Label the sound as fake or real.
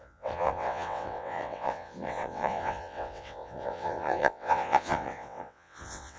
fake